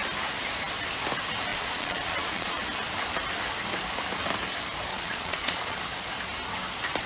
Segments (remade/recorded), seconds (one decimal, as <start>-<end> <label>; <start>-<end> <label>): 0.0-1.5 recorded; 1.5-2.6 remade; 2.6-4.9 recorded; 4.9-5.8 remade; 5.8-7.1 recorded